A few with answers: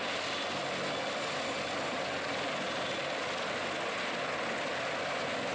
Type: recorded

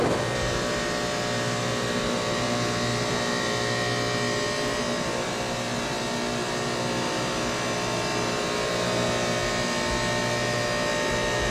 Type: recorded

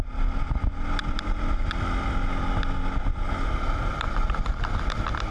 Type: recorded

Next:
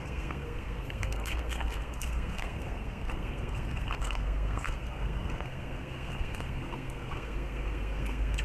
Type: remade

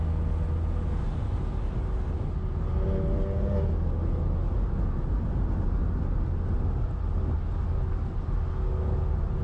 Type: recorded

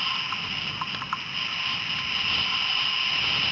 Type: recorded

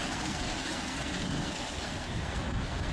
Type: remade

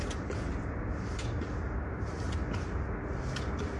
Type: recorded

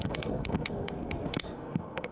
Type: remade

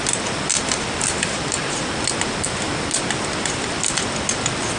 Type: recorded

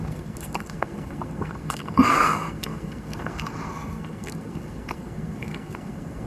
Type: remade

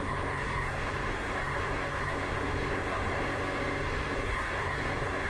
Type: remade